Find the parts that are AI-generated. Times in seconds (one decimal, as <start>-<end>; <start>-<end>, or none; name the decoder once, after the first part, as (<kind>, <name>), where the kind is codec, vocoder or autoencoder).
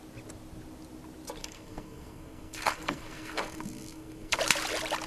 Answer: 1.4-4.4 (codec, SNAC)